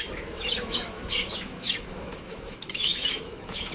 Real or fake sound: fake